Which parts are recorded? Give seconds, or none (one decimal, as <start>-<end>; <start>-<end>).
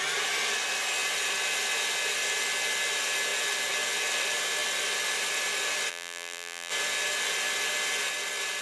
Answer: 0.0-5.9; 6.7-8.6